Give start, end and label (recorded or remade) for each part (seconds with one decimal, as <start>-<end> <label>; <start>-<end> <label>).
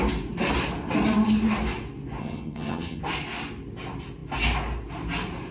0.0-2.2 recorded; 2.2-3.0 remade; 3.0-5.5 recorded